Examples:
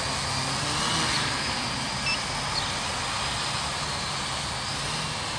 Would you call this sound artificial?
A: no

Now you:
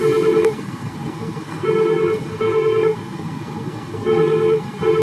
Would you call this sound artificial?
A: yes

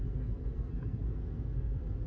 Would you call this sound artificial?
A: yes